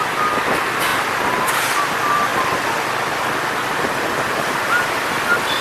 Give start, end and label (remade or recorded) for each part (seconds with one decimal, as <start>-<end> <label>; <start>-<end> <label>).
0.0-0.9 recorded; 0.9-1.5 remade; 1.5-5.6 recorded